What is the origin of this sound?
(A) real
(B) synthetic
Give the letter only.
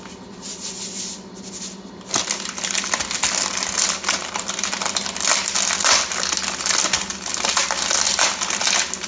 A